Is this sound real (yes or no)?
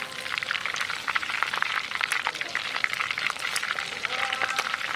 yes